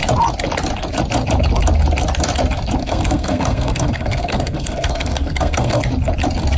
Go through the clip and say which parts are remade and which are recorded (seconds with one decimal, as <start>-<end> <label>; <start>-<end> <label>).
0.0-2.8 recorded; 2.8-5.8 remade; 5.8-6.6 recorded